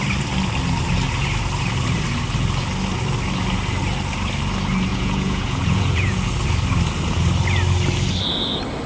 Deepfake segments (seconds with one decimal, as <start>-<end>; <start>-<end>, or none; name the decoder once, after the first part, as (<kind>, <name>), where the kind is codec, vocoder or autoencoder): 4.9-6.2 (vocoder, Vocos)